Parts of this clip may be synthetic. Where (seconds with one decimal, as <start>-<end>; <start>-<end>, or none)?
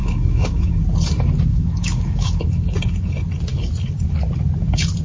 0.0-0.7; 1.5-2.4